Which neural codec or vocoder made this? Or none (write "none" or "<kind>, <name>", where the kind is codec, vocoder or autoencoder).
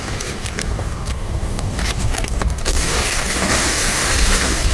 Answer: codec, DAC